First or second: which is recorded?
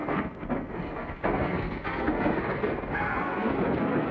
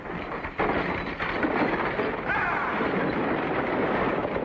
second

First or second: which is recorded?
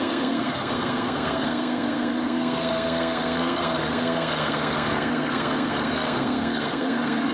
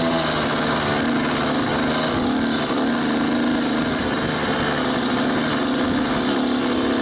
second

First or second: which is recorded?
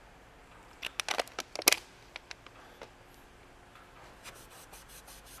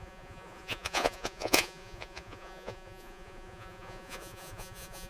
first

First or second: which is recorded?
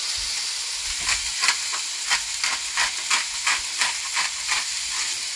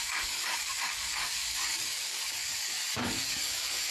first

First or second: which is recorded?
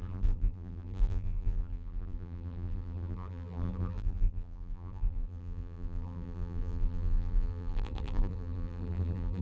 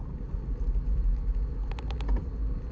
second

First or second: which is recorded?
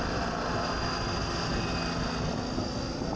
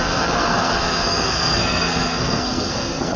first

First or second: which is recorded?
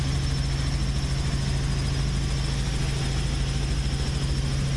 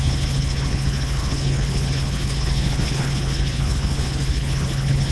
first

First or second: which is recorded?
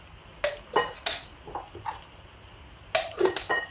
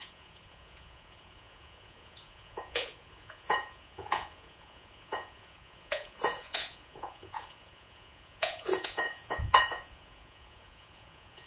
first